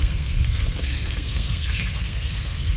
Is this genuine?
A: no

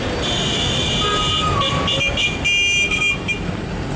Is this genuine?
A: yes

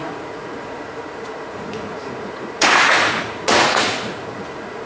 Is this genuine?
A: no